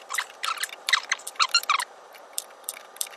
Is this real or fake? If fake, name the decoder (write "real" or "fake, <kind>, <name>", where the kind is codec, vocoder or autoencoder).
fake, vocoder, BigVGAN v2